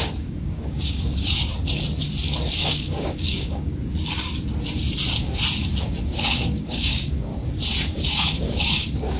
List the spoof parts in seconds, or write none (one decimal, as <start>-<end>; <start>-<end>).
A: 0.0-1.5; 2.6-3.7; 5.8-7.3; 7.9-9.2